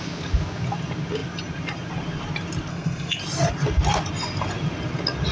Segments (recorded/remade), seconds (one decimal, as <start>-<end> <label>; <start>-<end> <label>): 0.0-2.7 recorded; 2.7-3.2 remade; 3.2-5.3 recorded